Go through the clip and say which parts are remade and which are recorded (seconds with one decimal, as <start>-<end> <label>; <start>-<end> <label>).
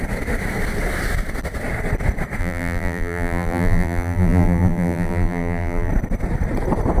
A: 0.0-2.4 recorded; 2.4-5.9 remade; 5.9-7.0 recorded